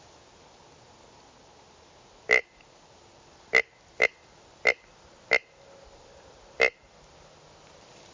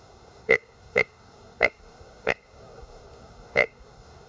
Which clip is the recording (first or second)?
first